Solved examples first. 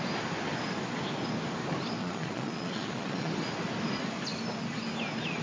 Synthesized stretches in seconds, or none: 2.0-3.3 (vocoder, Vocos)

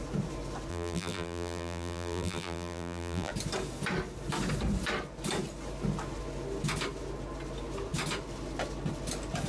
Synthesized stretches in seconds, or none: 0.7-3.3 (vocoder, BigVGAN v2)

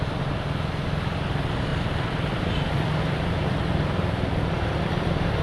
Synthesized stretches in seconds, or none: 1.7-4.9 (vocoder, BigVGAN v2)

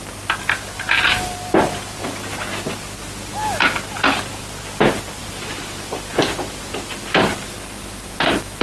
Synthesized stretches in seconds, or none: 5.2-8.6 (vocoder, BigVGAN v2)

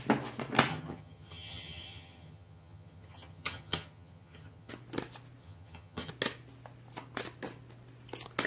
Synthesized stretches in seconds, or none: 0.7-4.7 (vocoder, HiFi-GAN); 5.4-6.1

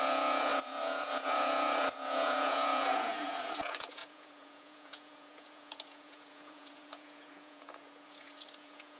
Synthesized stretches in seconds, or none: 0.0-9.0 (vocoder, Vocos)